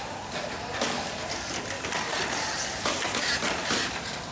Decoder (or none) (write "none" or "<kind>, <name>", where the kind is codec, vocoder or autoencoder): none